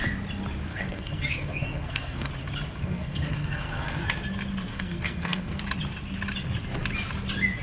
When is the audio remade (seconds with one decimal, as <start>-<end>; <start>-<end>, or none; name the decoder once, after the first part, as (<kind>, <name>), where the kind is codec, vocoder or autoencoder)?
0.7-2.3 (codec, SNAC); 2.8-4.0; 4.7-5.6